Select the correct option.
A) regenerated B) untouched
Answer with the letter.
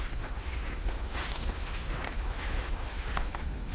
A